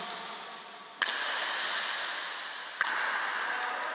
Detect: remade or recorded recorded